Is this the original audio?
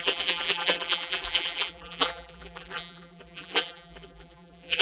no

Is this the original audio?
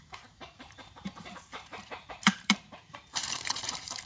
no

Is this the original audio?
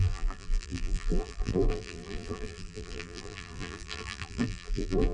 no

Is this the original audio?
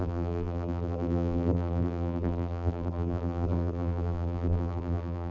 no